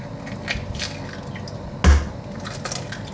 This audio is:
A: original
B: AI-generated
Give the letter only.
A